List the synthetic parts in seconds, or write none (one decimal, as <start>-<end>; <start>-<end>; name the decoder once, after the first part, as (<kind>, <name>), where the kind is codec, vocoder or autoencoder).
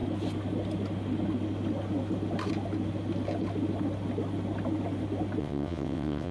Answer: 5.4-6.3 (vocoder, WaveNeXt)